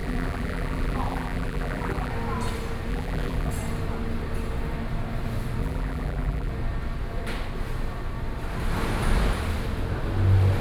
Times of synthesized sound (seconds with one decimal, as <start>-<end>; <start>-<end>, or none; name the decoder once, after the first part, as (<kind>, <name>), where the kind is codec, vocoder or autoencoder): 0.0-2.1 (vocoder, BigVGAN v2); 2.9-3.5; 5.6-6.5